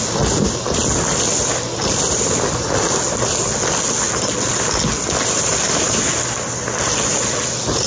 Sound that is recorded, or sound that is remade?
recorded